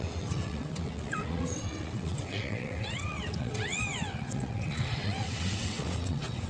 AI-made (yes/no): yes